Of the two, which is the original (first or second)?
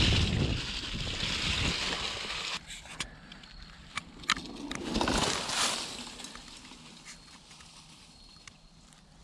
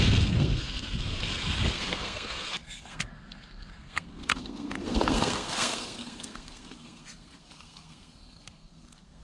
first